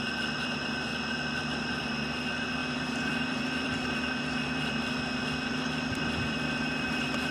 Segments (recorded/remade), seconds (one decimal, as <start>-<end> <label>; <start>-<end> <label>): 0.0-0.9 remade; 0.9-1.4 recorded; 1.4-7.3 remade